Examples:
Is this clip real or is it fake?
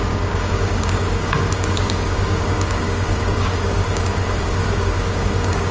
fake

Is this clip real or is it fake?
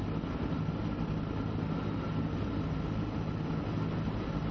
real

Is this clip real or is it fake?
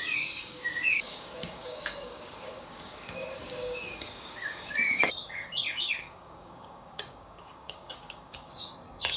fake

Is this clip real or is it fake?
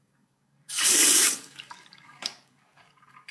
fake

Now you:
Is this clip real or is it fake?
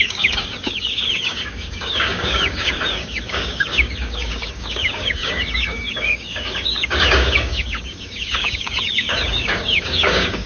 fake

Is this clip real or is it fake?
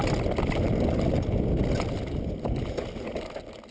real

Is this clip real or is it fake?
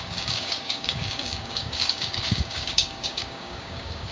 fake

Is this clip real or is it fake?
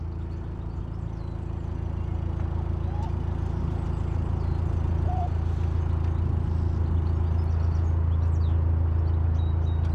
real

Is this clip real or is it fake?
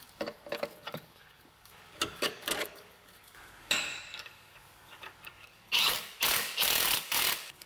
fake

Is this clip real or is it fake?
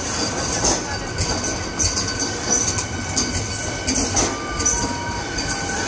real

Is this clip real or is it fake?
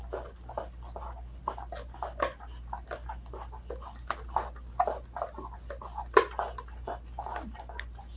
real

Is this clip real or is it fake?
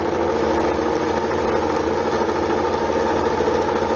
real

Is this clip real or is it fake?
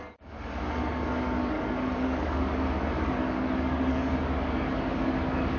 fake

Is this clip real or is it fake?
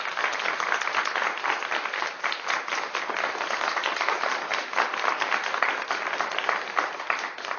real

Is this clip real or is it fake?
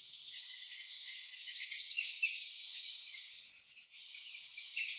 fake